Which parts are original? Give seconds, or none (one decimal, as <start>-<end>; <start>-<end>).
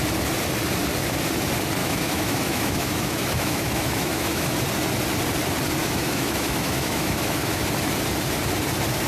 0.0-1.8; 4.4-5.8; 7.6-9.1